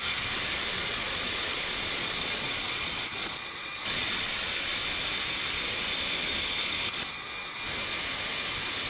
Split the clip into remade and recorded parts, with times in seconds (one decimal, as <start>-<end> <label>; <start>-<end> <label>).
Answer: 0.0-0.7 recorded; 0.7-4.8 remade; 4.8-8.9 recorded